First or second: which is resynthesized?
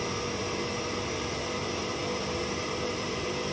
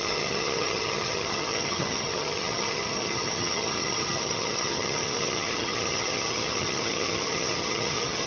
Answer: second